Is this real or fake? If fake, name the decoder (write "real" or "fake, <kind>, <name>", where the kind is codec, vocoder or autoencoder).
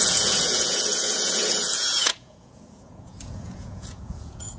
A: fake, vocoder, Vocos